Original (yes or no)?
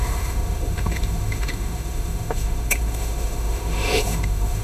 no